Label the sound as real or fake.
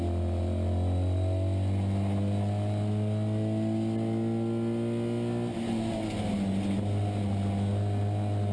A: real